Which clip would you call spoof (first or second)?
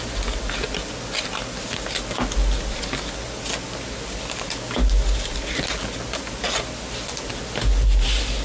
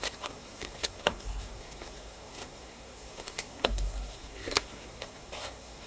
second